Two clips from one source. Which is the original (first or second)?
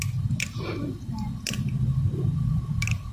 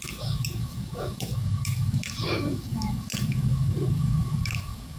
first